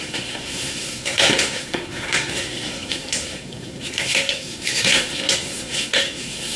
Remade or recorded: remade